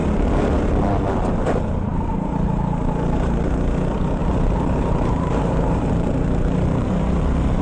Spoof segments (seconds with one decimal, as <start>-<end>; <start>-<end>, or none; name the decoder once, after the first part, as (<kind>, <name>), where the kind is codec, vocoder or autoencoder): 4.2-7.6 (vocoder, BigVGAN v2)